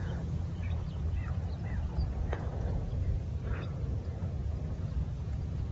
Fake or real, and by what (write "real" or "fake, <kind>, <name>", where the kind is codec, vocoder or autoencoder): fake, vocoder, Vocos